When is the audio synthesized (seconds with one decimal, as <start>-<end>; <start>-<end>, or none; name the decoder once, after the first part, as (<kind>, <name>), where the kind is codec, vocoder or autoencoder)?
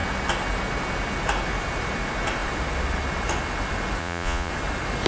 4.0-4.5 (vocoder, Vocos)